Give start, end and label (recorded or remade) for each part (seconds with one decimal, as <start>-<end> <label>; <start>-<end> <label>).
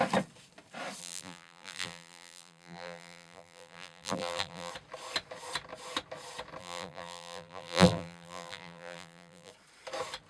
0.0-1.0 recorded; 1.0-4.7 remade; 4.7-6.6 recorded; 6.6-9.5 remade; 9.5-10.3 recorded